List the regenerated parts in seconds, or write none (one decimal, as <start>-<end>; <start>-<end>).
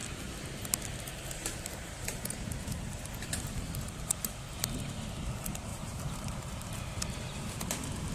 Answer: 1.4-4.8; 5.7-7.6